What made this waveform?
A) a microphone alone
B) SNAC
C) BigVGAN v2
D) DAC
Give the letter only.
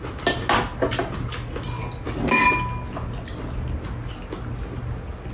A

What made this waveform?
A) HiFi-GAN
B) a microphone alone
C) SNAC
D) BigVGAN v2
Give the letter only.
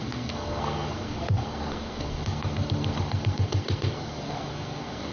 C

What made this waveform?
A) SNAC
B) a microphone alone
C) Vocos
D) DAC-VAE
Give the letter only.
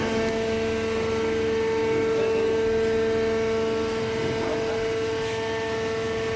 B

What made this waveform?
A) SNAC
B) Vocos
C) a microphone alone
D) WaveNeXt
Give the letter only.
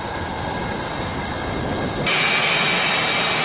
C